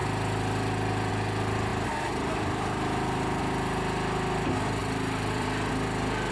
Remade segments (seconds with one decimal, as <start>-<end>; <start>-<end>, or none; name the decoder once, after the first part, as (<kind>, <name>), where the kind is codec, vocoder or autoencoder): 1.7-3.4 (vocoder, BigVGAN v2); 4.8-5.7